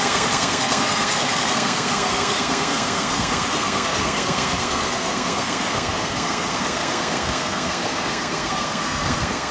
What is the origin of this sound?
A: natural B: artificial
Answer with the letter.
B